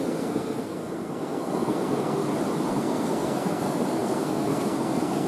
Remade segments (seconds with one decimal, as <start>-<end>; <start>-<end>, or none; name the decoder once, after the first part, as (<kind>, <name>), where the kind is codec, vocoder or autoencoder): 0.0-2.2 (codec, SNAC); 2.7-5.3